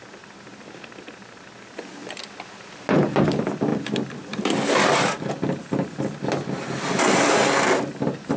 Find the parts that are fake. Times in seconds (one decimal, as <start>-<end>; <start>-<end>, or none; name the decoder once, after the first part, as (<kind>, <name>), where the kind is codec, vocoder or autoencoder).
3.7-5.3 (vocoder, BigVGAN v2)